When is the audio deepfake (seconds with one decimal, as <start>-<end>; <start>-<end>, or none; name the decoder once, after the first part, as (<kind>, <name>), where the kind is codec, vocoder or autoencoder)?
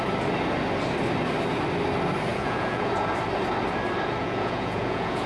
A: 2.3-2.9 (vocoder, Vocos); 4.2-5.3